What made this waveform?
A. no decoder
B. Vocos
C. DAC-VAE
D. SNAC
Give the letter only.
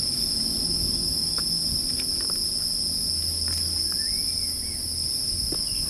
A